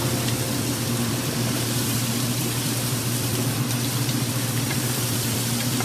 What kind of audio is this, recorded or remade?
remade